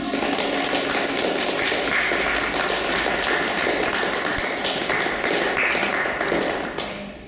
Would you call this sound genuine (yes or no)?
yes